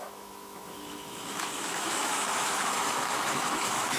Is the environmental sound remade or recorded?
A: remade